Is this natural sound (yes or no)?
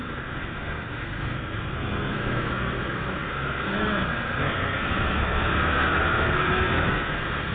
no